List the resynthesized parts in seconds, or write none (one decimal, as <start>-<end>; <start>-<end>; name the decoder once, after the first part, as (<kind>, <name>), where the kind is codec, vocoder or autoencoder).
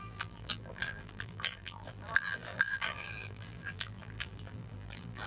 0.0-5.3 (vocoder, BigVGAN v2)